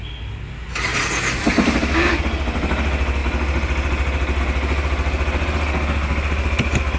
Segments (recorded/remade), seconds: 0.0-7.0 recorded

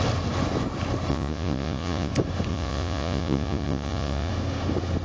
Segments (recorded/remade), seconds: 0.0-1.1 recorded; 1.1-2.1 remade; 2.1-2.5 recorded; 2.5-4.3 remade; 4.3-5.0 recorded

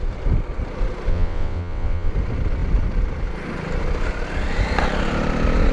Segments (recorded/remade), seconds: 0.0-1.1 recorded; 1.1-2.1 remade; 2.1-5.7 recorded